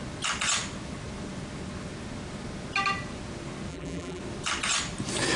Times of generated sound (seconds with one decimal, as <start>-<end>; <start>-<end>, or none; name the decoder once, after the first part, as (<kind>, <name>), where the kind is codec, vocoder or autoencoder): 3.7-4.2 (vocoder, BigVGAN v2)

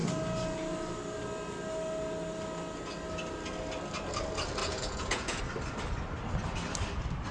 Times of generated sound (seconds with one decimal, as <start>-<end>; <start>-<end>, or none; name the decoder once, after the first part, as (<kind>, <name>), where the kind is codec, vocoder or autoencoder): 4.6-5.4 (vocoder, Vocos)

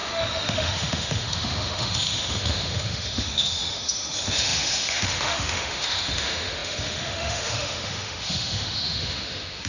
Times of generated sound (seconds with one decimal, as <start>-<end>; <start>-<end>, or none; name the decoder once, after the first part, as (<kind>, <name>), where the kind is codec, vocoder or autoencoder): 0.0-9.7 (autoencoder, DAC-VAE)

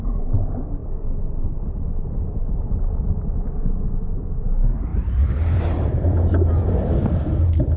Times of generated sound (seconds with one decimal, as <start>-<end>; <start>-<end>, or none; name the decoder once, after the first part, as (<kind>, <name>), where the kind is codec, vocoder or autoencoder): none

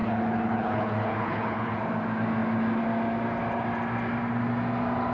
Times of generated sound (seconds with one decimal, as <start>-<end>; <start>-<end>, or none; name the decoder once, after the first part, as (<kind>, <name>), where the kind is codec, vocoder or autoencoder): 0.0-1.8 (codec, HILCodec)

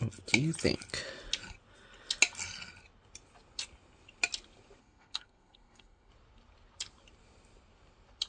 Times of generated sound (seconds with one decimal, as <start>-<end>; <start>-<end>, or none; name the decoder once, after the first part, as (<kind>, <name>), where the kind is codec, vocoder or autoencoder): 4.8-6.1 (codec, SNAC)

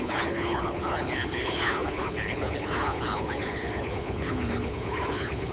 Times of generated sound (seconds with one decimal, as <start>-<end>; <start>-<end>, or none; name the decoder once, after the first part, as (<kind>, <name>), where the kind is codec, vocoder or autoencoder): 0.0-5.5 (codec, HILCodec)

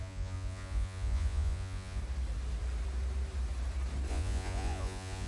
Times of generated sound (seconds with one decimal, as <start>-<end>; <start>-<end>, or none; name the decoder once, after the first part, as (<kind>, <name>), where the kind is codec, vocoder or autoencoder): 0.0-2.0 (vocoder, Vocos); 4.1-5.3